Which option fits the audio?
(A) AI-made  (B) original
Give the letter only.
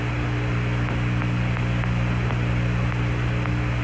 B